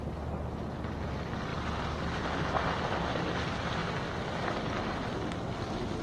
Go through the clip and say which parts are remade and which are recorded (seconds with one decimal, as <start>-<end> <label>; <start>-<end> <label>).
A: 0.0-6.0 recorded